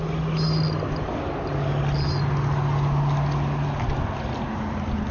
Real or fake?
real